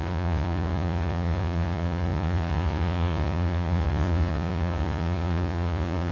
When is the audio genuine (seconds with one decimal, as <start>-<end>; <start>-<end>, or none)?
none

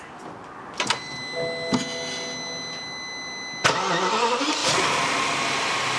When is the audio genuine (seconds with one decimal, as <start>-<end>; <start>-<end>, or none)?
0.0-6.0

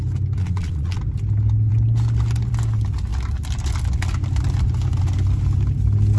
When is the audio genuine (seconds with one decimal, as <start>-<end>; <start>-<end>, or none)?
0.0-0.4; 1.0-6.2

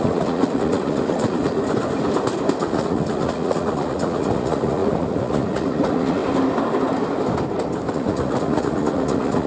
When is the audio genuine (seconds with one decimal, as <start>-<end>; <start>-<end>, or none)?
1.6-2.6; 6.2-7.9

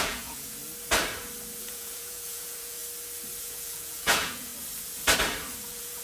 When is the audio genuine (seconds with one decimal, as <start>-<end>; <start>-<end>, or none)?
0.6-1.6; 2.8-3.4; 4.5-5.6

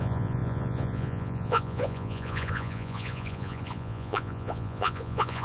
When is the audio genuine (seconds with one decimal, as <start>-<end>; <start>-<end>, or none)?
none

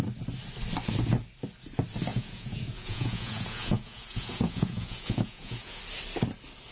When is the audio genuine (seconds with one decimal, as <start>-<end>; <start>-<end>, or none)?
0.0-2.1; 5.8-6.7